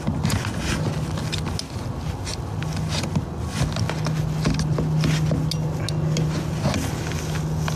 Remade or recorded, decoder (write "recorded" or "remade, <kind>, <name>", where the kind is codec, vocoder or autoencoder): recorded